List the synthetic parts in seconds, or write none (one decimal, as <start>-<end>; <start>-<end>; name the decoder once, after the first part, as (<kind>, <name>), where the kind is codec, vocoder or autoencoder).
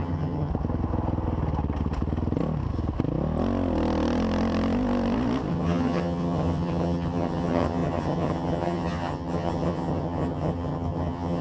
0.0-0.5 (vocoder, HiFi-GAN); 5.5-11.4